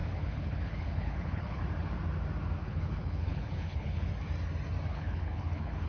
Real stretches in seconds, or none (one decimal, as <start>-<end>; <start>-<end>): 1.6-2.6; 4.1-4.9